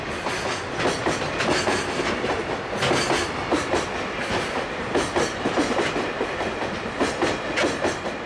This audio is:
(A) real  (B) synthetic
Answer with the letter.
A